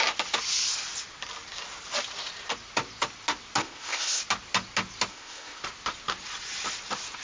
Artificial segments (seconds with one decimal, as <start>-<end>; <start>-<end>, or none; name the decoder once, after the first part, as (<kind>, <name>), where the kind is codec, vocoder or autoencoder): 3.6-4.2 (codec, ZipCodec); 5.1-5.6